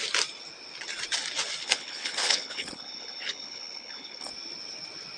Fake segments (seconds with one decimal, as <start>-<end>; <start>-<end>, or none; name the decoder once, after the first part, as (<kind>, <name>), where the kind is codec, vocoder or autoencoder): 1.6-4.3 (codec, HILCodec)